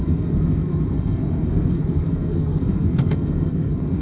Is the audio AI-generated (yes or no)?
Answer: yes